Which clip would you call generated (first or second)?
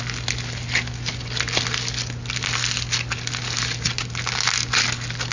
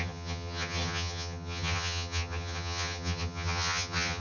second